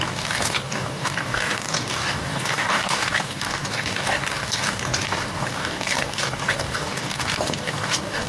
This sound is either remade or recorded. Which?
remade